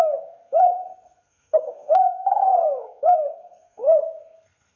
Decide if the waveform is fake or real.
fake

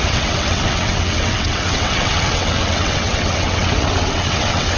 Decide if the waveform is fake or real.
fake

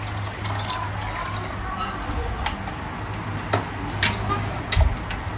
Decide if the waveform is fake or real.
real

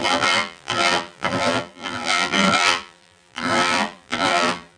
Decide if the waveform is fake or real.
fake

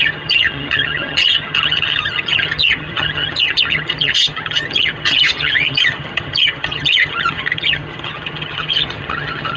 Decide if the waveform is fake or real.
fake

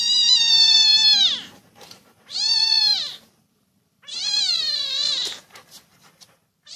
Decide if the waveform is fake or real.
fake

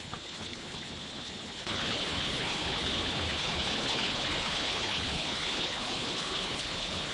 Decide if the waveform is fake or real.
fake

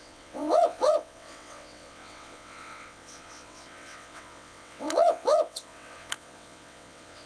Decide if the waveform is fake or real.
fake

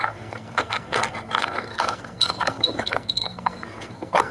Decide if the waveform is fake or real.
fake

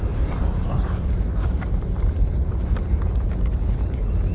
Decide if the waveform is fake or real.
real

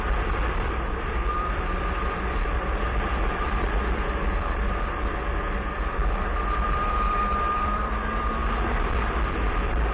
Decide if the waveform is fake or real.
fake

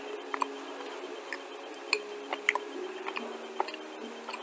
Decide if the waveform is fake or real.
real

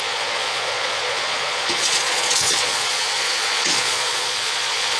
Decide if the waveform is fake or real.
fake